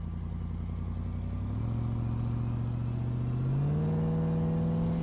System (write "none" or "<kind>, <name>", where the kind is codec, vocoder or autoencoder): none